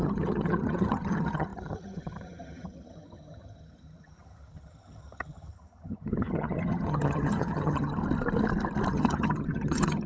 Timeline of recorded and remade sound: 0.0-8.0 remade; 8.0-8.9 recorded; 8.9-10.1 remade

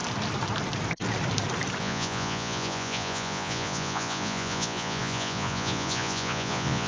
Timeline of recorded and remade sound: 0.0-1.8 recorded; 1.8-6.9 remade